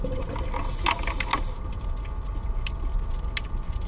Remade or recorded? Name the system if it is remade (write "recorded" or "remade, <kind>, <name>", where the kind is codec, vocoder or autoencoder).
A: recorded